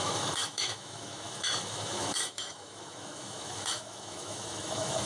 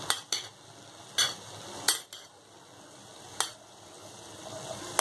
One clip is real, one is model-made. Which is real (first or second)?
second